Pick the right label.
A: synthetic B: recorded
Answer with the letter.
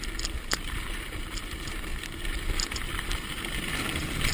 A